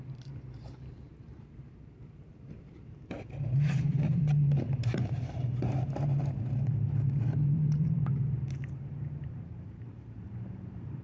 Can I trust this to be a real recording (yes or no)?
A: no